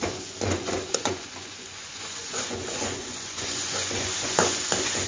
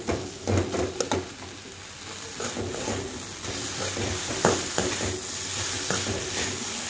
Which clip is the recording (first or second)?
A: second